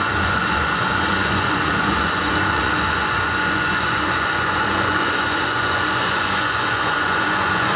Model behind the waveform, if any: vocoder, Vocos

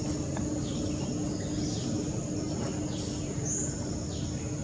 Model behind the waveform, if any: none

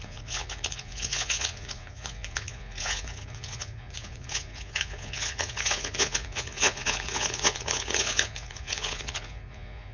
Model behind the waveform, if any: vocoder, Vocos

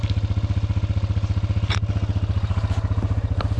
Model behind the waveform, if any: none